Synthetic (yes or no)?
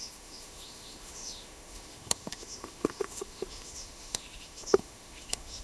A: yes